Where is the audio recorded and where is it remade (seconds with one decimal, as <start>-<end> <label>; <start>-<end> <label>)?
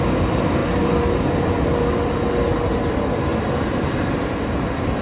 0.0-5.0 recorded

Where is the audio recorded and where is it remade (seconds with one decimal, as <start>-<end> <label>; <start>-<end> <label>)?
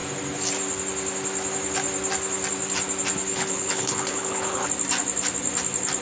0.0-3.3 recorded; 3.3-4.7 remade; 4.7-6.0 recorded